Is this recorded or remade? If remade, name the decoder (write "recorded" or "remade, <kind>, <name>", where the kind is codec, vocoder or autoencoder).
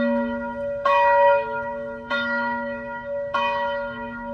remade, autoencoder, DAC-VAE